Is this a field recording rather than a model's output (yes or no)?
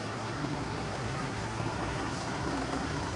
no